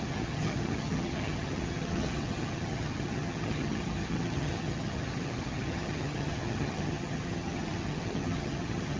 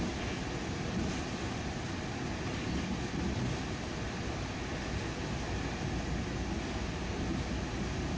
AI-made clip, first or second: first